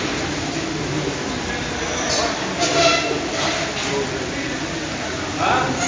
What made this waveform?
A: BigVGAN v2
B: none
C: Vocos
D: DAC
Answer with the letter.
B